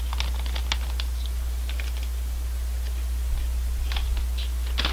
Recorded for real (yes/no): yes